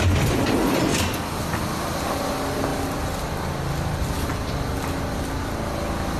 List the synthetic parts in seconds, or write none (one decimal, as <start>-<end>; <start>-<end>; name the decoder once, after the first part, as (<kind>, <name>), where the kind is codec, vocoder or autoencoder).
0.9-1.6 (vocoder, BigVGAN v2); 2.7-4.2

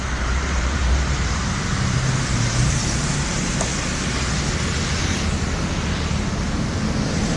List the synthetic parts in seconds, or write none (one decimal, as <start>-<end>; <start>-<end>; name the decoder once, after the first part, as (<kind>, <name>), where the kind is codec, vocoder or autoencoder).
0.0-3.7 (vocoder, BigVGAN v2); 6.9-7.4

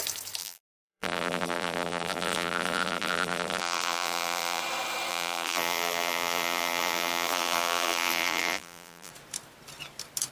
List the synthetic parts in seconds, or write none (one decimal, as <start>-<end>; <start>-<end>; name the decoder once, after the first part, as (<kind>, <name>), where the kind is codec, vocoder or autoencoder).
0.4-4.6 (vocoder, BigVGAN v2); 5.1-9.1

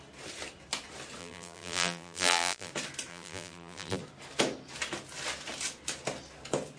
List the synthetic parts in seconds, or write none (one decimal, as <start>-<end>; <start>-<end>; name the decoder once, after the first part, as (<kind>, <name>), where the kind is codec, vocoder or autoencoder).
1.2-2.7 (vocoder, BigVGAN v2); 3.1-4.0

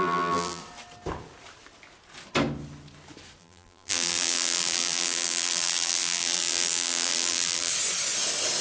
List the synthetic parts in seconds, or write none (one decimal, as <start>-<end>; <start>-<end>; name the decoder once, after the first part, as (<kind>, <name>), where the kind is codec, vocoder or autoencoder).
0.0-0.6 (vocoder, BigVGAN v2); 3.4-7.7